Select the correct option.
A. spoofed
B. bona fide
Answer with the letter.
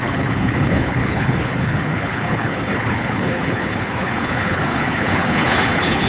A